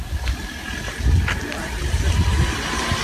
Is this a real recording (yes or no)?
yes